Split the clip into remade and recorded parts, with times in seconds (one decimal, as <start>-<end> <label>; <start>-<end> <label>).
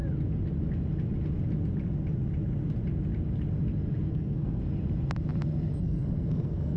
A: 0.0-4.1 recorded; 4.1-4.6 remade; 4.6-5.8 recorded; 5.8-6.8 remade